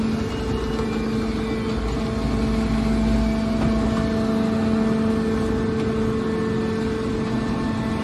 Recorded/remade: recorded